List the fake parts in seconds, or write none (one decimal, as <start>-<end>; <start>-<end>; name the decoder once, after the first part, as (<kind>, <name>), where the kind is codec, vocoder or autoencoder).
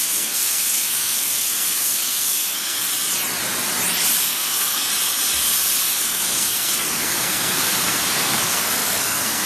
0.0-2.9 (codec, SNAC); 4.2-4.9; 6.0-9.5